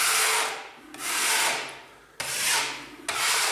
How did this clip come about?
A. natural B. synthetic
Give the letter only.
A